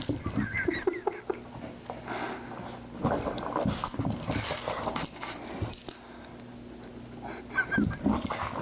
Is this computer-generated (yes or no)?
no